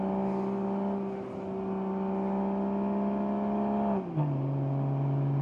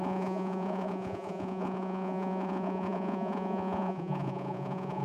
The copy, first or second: second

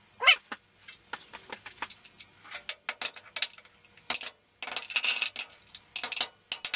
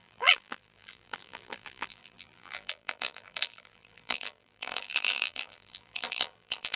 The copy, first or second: second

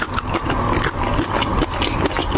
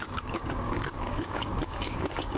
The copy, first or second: second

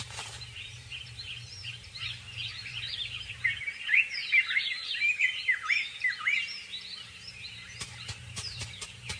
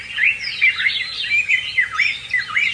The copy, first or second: first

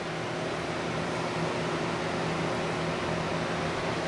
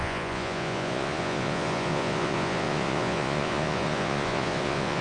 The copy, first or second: second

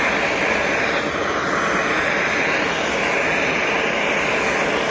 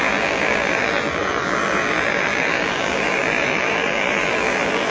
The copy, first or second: second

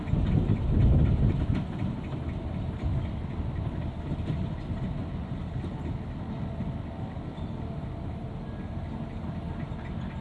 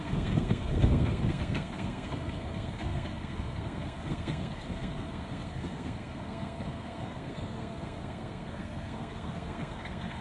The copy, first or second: second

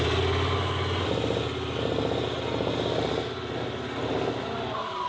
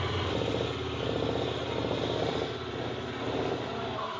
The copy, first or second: second